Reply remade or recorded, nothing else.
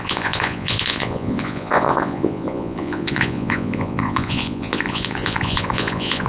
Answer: remade